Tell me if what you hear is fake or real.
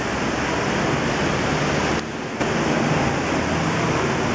real